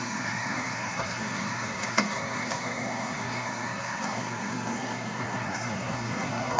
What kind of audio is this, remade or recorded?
remade